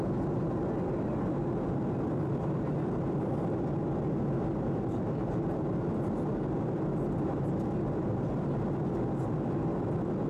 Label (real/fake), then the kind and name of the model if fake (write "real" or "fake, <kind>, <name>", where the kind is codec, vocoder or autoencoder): real